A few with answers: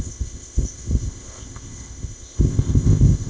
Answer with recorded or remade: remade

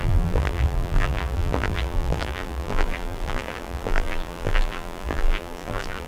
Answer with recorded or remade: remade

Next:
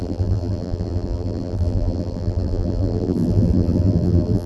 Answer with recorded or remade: remade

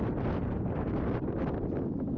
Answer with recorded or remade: recorded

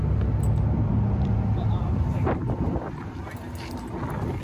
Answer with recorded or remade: recorded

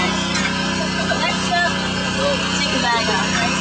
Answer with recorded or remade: recorded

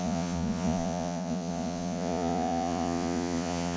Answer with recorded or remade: remade